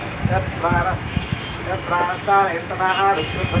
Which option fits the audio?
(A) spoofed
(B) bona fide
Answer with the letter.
A